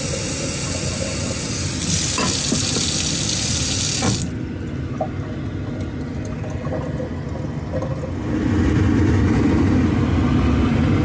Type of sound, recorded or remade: recorded